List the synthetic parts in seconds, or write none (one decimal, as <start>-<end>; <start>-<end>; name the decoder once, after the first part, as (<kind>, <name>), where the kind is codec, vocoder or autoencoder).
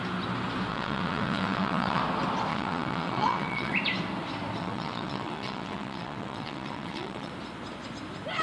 0.7-2.0 (vocoder, WaveNeXt); 2.5-3.7; 4.6-7.3